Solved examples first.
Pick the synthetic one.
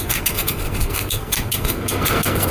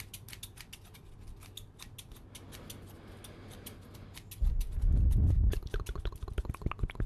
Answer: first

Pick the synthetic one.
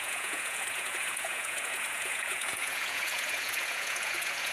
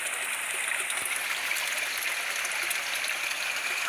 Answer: first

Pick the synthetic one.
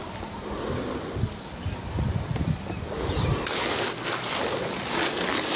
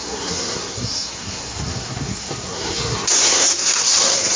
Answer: second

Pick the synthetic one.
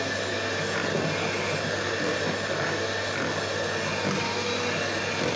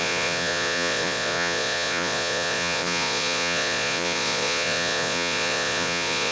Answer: second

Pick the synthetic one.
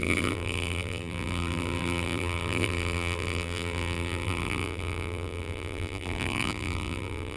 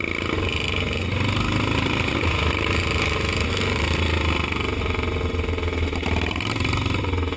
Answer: first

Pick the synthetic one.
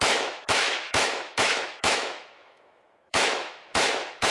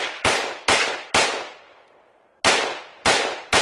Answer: first